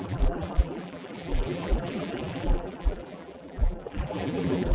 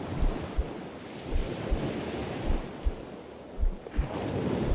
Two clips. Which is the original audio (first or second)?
second